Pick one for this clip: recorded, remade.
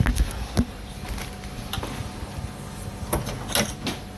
recorded